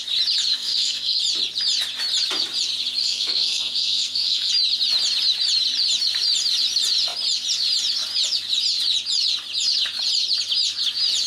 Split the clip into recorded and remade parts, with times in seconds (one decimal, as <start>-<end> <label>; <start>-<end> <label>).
0.0-0.5 recorded; 0.5-1.2 remade; 1.2-3.0 recorded; 3.0-4.5 remade; 4.5-11.3 recorded